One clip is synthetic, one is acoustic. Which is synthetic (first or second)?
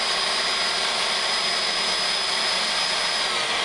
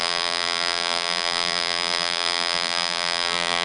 second